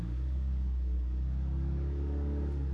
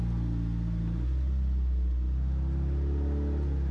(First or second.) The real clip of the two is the second